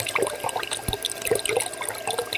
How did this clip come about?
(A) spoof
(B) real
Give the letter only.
B